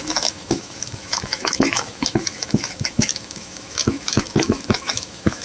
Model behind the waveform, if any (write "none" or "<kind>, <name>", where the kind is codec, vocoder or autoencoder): autoencoder, DAC-VAE